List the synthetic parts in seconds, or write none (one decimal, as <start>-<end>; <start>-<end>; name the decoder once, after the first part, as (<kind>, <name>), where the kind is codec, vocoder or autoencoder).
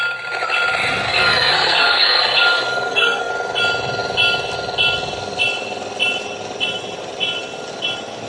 1.1-3.3 (codec, SNAC)